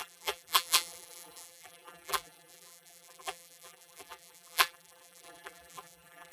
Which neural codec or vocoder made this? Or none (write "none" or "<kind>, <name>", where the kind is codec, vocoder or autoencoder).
vocoder, BigVGAN v2